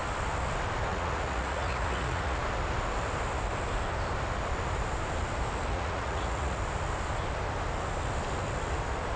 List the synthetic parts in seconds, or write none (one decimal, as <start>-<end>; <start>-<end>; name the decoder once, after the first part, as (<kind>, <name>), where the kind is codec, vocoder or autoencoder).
0.9-2.4 (vocoder, Vocos); 5.7-6.6